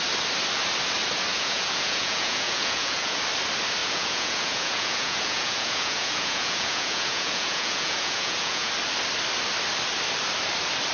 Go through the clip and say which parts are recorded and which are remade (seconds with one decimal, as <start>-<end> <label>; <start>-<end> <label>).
0.0-1.3 recorded; 1.3-3.2 remade; 3.2-3.8 recorded; 3.8-8.7 remade; 8.7-10.9 recorded